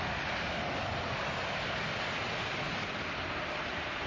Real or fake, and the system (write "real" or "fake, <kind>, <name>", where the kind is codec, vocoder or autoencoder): real